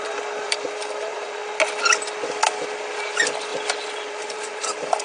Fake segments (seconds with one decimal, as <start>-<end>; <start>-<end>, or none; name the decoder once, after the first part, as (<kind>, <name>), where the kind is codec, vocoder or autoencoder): 0.0-1.4 (vocoder, BigVGAN v2); 3.0-3.5; 4.1-5.0